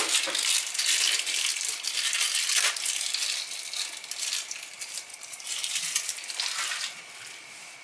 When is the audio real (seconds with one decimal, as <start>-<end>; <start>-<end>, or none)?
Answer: 0.0-5.1; 5.8-7.8